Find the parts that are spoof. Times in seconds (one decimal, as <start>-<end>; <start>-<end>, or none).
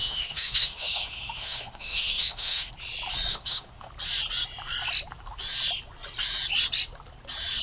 0.0-2.7; 3.3-3.9